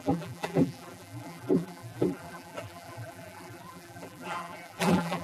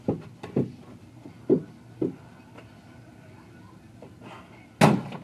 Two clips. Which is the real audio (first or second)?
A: second